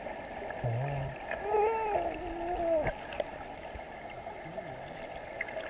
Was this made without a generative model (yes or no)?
yes